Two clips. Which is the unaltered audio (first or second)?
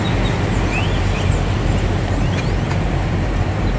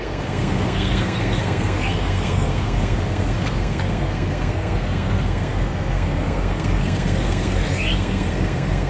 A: first